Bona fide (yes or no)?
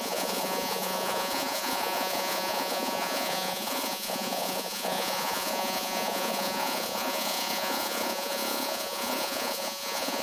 no